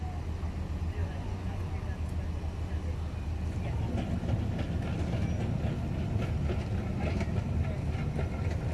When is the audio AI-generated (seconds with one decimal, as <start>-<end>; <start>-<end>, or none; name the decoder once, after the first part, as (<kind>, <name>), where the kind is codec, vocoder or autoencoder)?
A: 1.0-1.7 (vocoder, Vocos)